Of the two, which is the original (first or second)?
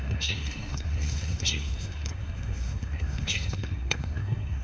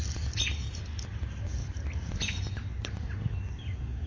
second